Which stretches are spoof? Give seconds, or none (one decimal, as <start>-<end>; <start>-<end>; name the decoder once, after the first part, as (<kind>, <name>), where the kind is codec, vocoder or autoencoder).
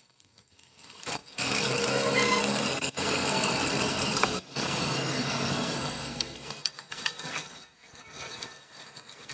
0.0-9.3 (codec, SNAC)